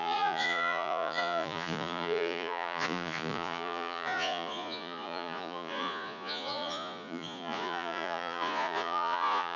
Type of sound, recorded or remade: remade